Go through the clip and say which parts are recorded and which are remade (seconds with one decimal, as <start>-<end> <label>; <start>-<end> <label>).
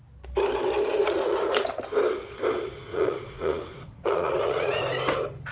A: 0.0-0.9 recorded; 0.9-1.6 remade; 1.6-2.9 recorded; 2.9-4.8 remade; 4.8-5.5 recorded